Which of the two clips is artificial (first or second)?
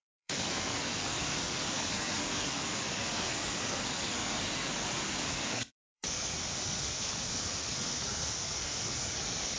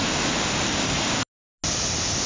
first